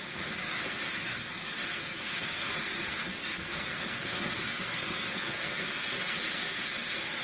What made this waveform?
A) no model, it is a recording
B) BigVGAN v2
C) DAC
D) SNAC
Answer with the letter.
D